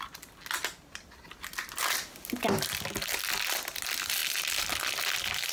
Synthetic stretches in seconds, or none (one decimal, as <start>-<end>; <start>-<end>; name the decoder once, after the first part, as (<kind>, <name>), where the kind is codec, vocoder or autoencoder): none